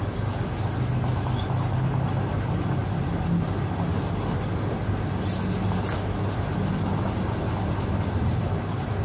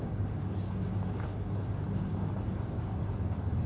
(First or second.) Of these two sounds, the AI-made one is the second